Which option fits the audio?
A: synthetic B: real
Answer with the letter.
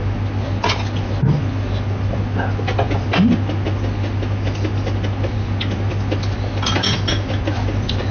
B